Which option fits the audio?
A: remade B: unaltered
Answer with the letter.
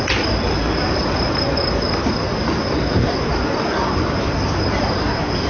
B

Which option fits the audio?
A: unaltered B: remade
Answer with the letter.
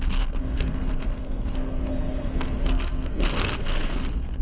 B